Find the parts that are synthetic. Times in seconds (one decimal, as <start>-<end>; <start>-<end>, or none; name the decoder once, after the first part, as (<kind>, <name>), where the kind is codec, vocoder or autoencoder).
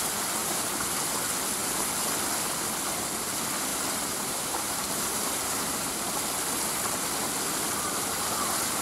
0.4-1.2 (vocoder, BigVGAN v2); 3.7-6.1